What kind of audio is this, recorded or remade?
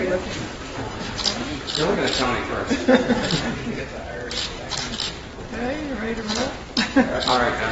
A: recorded